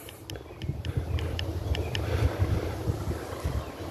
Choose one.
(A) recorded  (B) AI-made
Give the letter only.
A